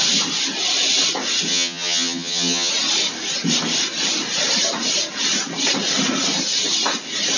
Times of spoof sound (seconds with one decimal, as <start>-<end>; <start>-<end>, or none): 1.5-2.7